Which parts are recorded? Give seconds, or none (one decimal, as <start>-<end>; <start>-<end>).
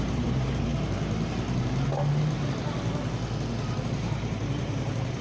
0.7-3.8